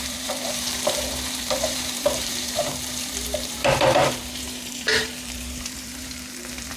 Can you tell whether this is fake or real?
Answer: fake